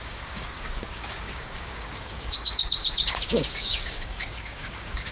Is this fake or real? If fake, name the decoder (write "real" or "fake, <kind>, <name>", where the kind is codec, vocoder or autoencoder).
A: fake, codec, DAC